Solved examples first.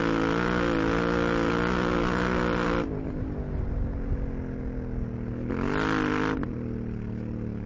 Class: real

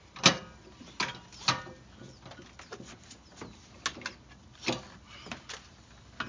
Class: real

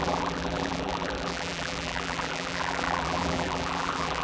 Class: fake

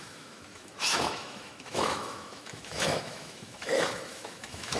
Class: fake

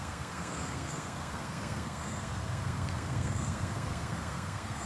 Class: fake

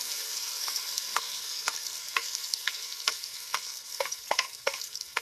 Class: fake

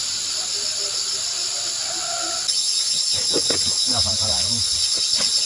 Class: real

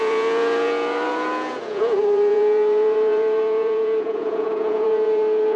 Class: fake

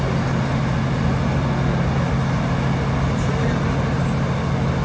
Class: real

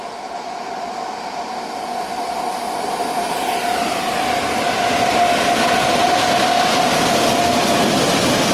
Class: real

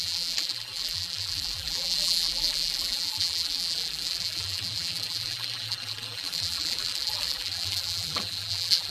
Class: fake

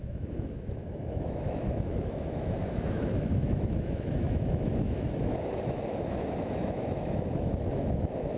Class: fake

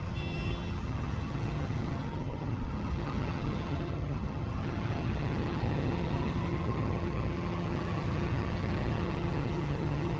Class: fake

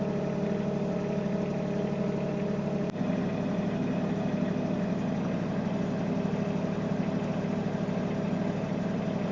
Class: real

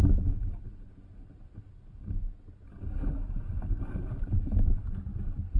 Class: real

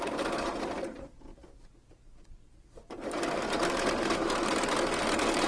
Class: fake